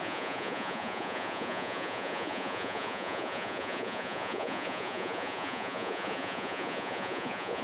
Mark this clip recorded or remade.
remade